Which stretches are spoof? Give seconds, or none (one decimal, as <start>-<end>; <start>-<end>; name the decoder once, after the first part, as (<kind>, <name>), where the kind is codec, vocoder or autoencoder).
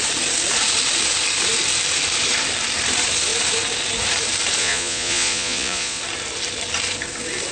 4.6-6.0 (vocoder, Vocos)